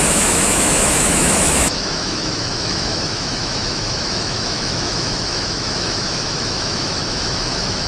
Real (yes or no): no